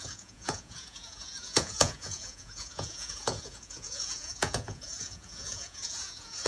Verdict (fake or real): fake